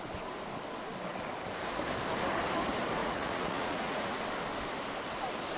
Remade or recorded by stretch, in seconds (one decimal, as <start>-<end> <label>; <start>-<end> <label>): 0.0-3.0 recorded; 3.0-4.2 remade; 4.2-5.6 recorded